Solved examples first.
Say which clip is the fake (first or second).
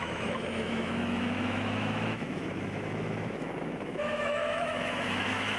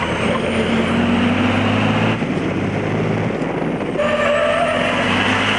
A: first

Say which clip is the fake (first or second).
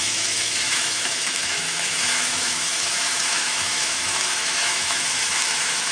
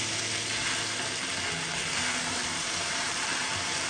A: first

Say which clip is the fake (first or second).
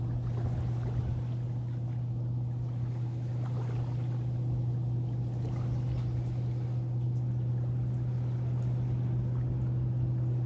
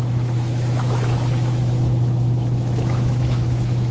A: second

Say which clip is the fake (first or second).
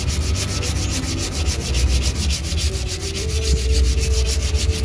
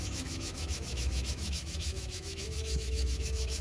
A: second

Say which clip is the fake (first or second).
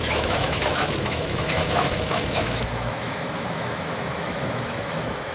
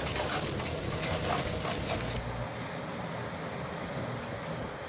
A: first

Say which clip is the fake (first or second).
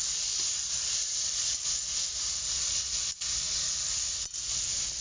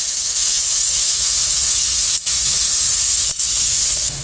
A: second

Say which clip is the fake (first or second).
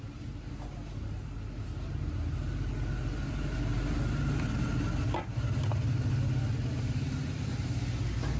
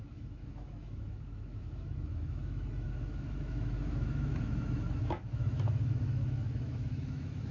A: second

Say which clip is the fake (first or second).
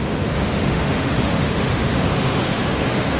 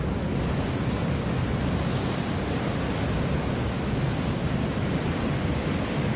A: first